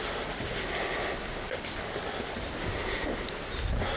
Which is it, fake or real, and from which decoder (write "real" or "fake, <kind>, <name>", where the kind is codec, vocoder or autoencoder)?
real